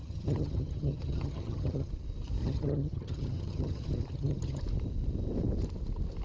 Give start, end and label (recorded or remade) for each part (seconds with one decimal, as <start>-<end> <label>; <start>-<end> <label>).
0.0-1.9 remade; 1.9-2.4 recorded; 2.4-4.6 remade; 4.6-6.2 recorded